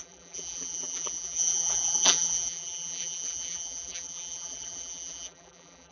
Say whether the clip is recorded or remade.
remade